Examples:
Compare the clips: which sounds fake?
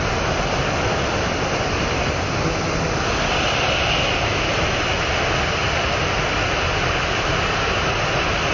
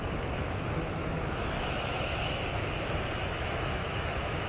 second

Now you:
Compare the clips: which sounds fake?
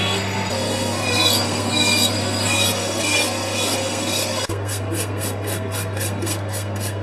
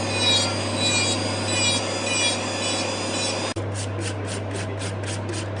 first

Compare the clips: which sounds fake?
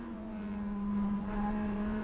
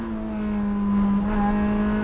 first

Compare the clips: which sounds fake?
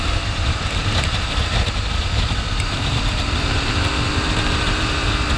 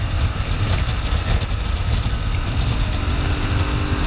first